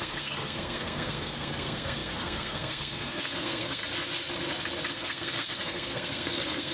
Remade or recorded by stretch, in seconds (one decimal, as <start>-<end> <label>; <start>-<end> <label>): 0.0-3.8 remade; 3.8-4.9 recorded; 4.9-6.7 remade